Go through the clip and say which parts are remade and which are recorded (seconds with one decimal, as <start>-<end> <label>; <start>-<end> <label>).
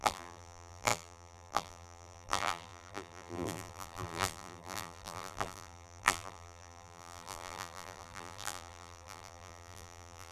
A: 0.0-10.3 remade